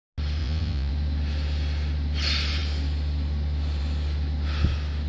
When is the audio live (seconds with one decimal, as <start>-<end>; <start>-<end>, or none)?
0.0-0.4; 0.9-5.1